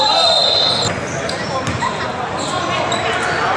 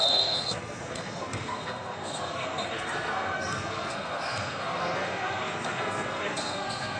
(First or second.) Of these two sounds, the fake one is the second